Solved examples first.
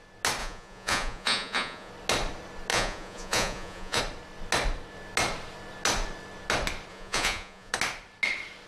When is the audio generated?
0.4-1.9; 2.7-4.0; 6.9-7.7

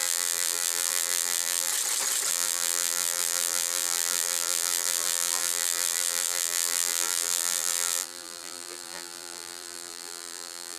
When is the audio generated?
0.0-1.7; 2.3-10.8

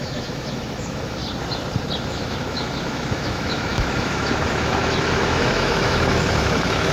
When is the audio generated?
0.0-1.2; 2.0-6.9